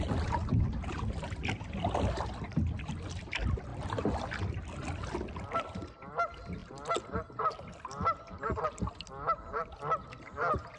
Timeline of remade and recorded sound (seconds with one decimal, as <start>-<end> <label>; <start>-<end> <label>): 0.0-10.8 recorded